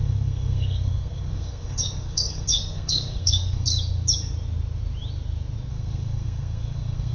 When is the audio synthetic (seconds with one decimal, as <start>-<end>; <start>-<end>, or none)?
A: 0.0-3.7; 5.7-7.1